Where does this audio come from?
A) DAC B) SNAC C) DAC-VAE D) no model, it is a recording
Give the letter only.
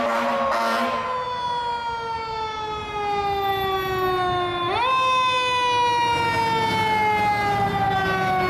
D